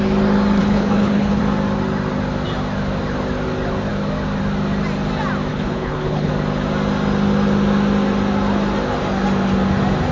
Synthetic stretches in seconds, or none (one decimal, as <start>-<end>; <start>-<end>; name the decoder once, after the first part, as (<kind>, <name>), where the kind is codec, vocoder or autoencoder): 0.6-1.4 (codec, HILCodec); 5.5-6.3